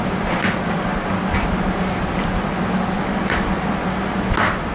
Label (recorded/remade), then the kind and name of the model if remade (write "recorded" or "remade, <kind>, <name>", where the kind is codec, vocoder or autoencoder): recorded